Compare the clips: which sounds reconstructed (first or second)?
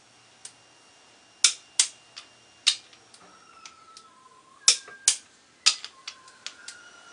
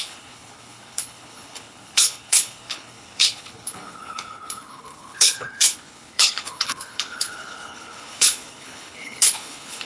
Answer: second